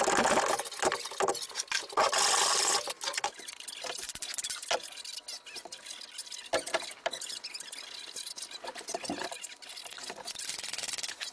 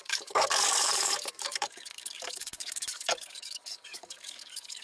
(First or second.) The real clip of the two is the first